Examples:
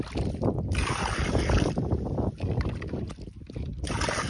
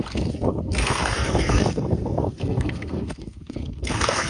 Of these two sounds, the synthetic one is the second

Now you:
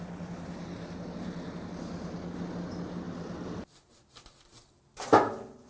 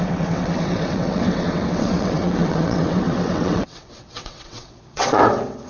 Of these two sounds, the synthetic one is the second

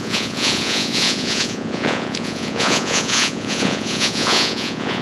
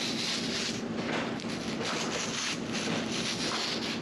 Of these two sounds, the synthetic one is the first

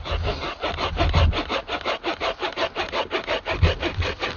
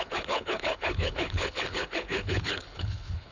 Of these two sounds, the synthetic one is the second